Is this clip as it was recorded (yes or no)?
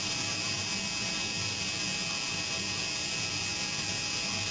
yes